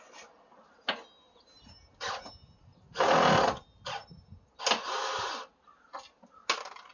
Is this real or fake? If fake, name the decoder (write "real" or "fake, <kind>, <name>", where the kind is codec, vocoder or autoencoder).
real